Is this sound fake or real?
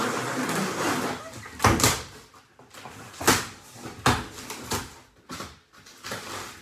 real